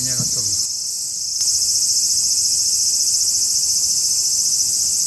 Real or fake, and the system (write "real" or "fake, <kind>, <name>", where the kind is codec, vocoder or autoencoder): real